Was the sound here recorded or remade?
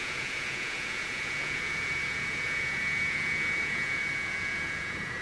remade